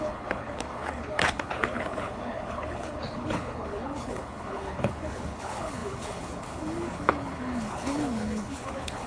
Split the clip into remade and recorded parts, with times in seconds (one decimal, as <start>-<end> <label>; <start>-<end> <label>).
0.0-9.1 remade